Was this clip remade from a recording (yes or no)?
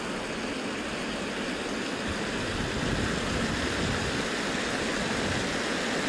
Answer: no